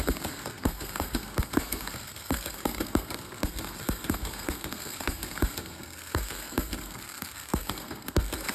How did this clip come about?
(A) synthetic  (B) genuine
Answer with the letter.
A